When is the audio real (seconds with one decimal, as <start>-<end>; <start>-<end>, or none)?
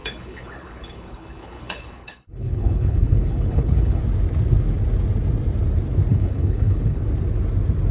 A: 4.0-6.1; 7.0-7.9